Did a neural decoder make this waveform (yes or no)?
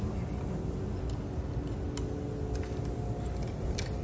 no